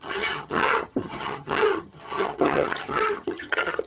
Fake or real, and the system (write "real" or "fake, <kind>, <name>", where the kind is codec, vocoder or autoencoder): fake, vocoder, HiFi-GAN